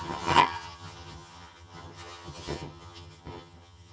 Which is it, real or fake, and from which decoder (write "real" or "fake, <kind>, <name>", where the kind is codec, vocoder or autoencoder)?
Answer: fake, vocoder, HiFi-GAN